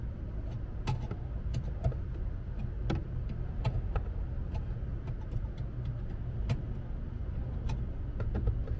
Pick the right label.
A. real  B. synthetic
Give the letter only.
A